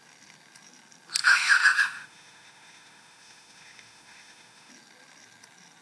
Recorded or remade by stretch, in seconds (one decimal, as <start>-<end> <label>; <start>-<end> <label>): 0.0-1.2 recorded; 1.2-4.7 remade; 4.7-5.8 recorded